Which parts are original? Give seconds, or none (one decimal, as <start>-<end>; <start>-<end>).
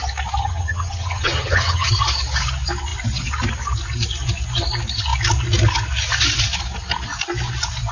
0.0-0.4; 1.9-7.9